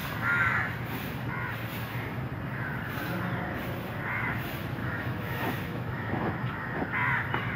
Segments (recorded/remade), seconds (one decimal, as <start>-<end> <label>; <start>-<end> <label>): 0.0-4.8 recorded; 4.8-6.3 remade; 6.3-7.6 recorded